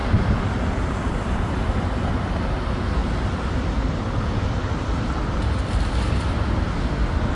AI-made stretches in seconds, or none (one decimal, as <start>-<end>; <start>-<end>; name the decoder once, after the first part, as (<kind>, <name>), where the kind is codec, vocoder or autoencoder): none